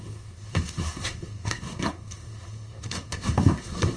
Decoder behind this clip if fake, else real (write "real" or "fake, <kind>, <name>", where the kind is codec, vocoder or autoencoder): fake, codec, SNAC